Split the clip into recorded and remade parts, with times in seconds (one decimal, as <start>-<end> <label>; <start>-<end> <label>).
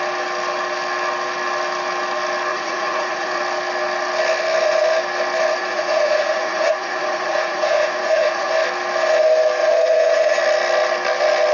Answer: 0.0-2.5 recorded; 2.5-3.4 remade; 3.4-5.6 recorded; 5.6-8.5 remade; 8.5-9.6 recorded; 9.6-10.4 remade; 10.4-11.5 recorded